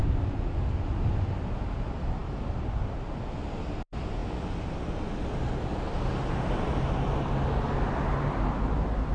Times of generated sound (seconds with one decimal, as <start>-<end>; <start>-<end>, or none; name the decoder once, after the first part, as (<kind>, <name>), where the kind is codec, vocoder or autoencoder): none